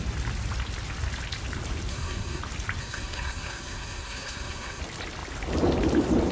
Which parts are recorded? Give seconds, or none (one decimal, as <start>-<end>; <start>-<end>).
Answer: 0.0-1.9; 2.4-2.8; 4.8-6.3